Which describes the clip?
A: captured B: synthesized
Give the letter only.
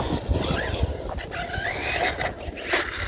A